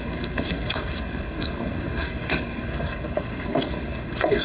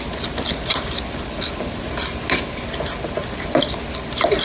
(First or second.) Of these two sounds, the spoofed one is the first